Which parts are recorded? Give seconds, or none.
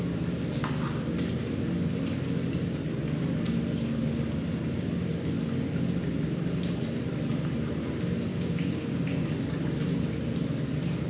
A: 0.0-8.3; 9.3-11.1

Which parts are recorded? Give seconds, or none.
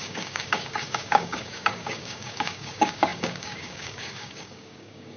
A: none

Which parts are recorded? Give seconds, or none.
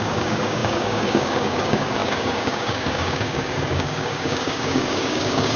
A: none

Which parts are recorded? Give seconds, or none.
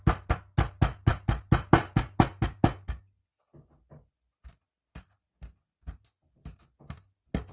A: 0.0-7.5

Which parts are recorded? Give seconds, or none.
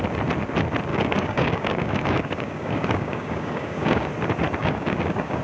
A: 0.0-0.9; 4.1-4.6